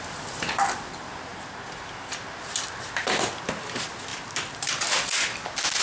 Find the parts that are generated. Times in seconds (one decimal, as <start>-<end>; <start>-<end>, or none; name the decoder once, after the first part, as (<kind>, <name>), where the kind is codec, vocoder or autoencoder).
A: none